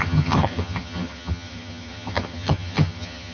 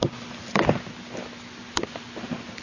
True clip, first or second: second